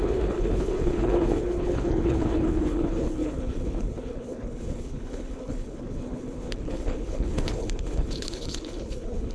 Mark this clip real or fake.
fake